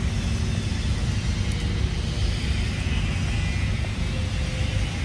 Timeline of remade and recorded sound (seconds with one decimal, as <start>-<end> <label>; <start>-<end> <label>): 0.0-5.0 recorded